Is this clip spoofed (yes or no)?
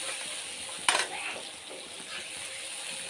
no